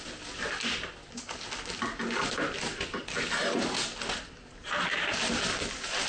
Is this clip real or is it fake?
real